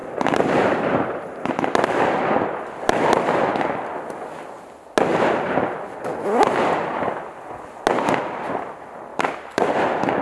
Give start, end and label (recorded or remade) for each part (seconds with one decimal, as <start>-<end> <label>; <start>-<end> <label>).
0.0-1.5 remade; 1.5-5.1 recorded; 5.1-5.7 remade; 5.7-9.1 recorded; 9.1-9.7 remade; 9.7-10.2 recorded